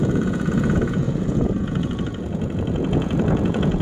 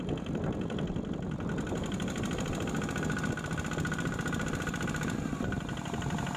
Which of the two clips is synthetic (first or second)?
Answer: first